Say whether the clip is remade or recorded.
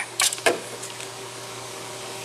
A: remade